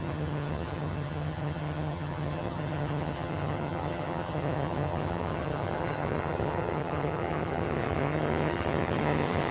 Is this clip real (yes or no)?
no